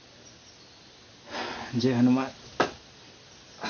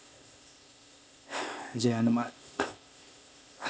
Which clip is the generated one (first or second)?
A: second